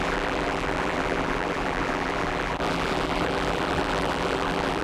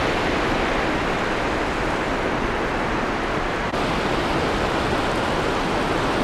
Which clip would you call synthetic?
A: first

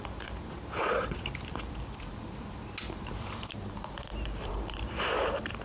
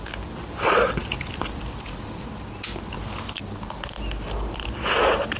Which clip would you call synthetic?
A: first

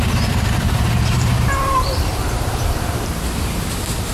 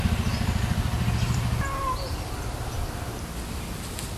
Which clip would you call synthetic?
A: first